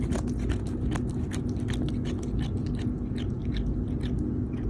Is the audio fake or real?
real